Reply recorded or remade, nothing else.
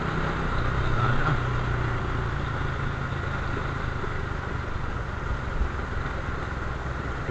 recorded